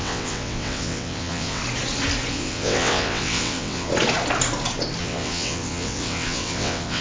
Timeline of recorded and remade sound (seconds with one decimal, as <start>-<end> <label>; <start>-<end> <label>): 0.0-1.6 remade; 1.6-2.3 recorded; 2.3-3.9 remade; 3.9-5.0 recorded; 5.0-7.0 remade

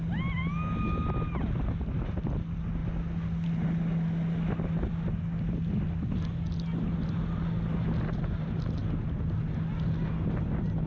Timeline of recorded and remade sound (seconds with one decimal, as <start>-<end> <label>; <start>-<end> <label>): 0.0-10.9 recorded